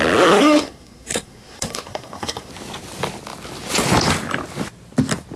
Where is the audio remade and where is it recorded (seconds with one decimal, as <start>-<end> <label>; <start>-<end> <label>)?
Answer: 0.0-0.4 recorded; 0.4-2.5 remade; 2.5-5.4 recorded